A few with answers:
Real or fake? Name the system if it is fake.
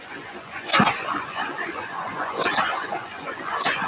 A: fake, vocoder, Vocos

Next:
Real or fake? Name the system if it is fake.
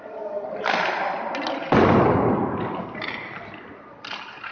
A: real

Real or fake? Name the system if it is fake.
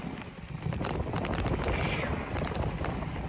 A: real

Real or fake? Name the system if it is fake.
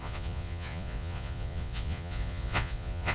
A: fake, vocoder, Vocos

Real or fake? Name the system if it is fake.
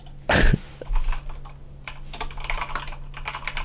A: real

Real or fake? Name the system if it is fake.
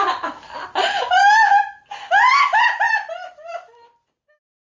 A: real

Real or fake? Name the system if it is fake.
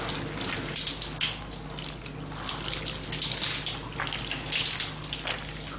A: real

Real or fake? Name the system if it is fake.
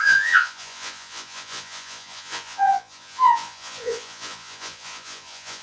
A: fake, vocoder, Vocos